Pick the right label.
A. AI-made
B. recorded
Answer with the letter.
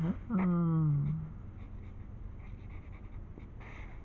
B